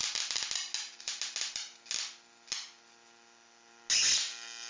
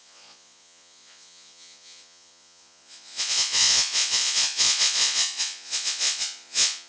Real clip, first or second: first